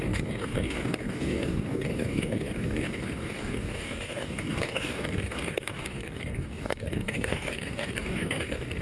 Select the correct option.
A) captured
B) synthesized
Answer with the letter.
B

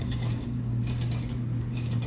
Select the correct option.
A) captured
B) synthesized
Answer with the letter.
B